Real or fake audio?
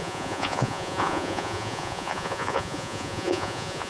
fake